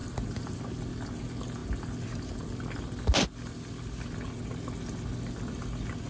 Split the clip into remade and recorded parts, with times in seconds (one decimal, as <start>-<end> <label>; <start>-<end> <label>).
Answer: 0.0-6.1 recorded